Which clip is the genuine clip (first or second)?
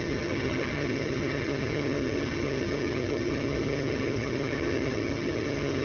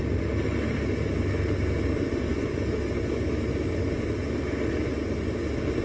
second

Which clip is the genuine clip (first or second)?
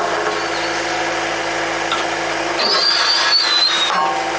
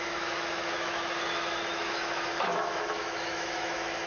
first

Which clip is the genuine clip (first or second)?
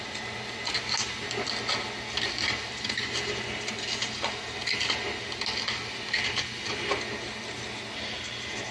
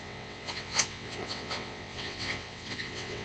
first